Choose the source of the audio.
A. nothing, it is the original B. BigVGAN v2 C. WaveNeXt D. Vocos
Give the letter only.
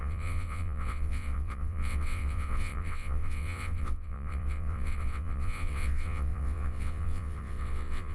C